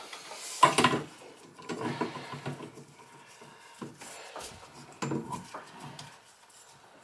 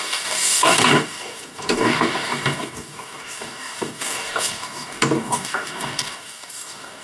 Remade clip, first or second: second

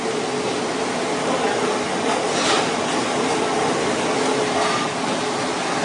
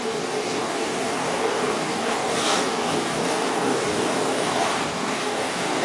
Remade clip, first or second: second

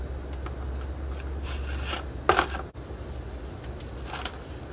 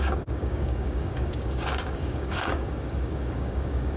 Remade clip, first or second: second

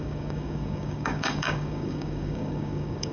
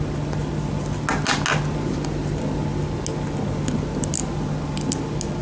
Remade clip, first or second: first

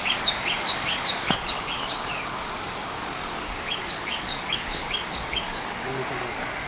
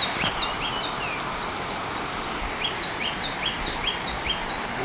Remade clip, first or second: first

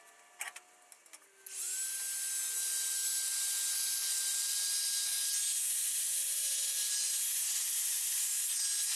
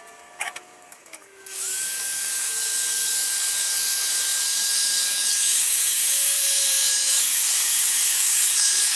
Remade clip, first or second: second